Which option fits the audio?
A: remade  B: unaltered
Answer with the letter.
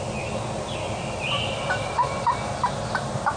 B